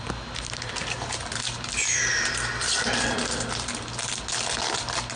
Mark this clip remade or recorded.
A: recorded